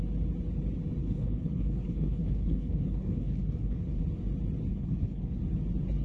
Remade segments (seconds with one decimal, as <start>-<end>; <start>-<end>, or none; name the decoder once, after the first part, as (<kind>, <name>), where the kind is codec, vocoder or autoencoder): 1.0-4.0 (codec, HILCodec); 4.7-5.4